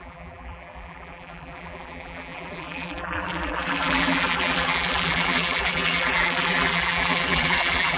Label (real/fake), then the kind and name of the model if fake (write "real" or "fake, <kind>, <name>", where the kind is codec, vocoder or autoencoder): fake, vocoder, BigVGAN v2